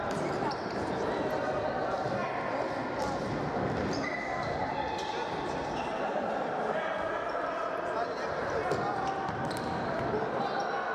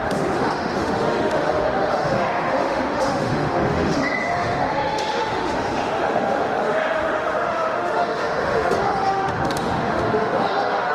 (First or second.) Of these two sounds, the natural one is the first